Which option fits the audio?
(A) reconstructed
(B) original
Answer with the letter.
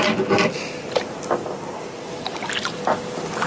B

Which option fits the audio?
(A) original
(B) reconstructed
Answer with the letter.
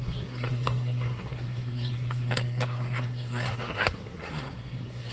B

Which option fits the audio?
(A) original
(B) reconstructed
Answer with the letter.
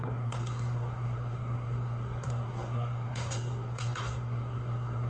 B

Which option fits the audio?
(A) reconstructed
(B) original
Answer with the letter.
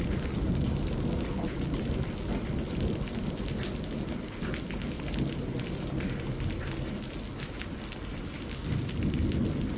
B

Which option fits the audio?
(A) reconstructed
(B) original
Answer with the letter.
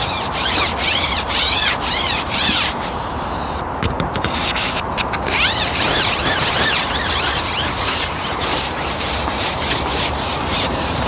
A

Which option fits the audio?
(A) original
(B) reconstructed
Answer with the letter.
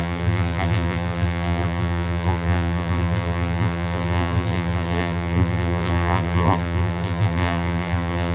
B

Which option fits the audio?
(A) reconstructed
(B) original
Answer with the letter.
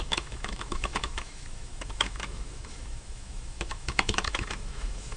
A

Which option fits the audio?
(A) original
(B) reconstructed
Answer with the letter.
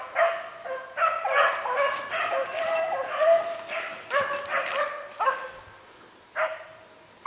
A